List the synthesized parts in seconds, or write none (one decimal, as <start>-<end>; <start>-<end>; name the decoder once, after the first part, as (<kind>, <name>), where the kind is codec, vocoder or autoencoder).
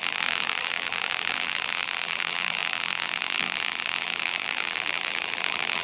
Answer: 0.0-5.8 (vocoder, BigVGAN v2)